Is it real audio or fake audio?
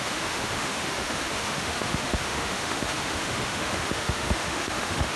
fake